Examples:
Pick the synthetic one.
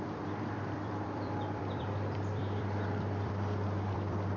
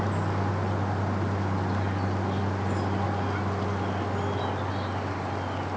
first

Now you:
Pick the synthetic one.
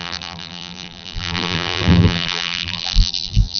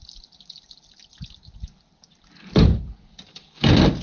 first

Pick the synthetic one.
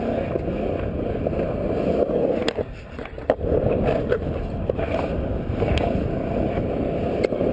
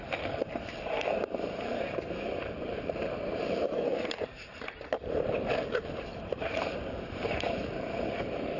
second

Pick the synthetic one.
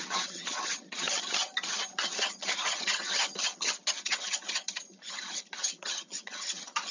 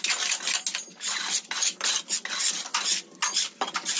first